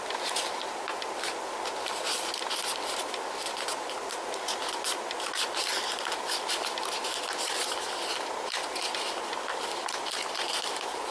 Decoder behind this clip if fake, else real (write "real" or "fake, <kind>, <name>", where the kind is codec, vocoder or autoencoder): real